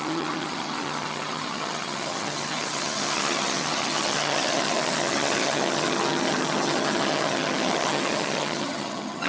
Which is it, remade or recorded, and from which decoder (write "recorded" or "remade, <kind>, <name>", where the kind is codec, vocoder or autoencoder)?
remade, vocoder, HiFi-GAN